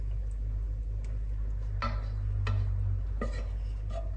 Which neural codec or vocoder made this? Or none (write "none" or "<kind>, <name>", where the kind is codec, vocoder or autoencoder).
none